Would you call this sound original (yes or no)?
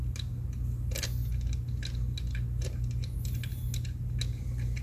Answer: yes